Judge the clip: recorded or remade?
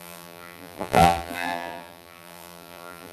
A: remade